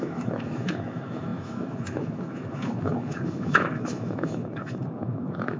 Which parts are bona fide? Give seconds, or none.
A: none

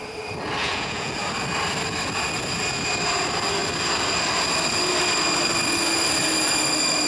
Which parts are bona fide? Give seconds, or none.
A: 0.0-0.6; 1.2-7.1

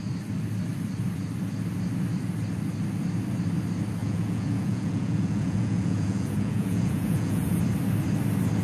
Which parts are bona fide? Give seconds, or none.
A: 0.0-4.0; 7.6-8.6

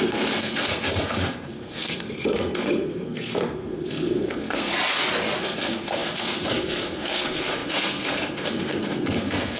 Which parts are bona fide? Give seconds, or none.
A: 4.7-5.4

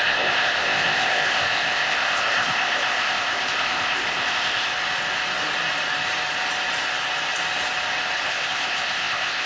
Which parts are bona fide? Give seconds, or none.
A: 4.7-8.3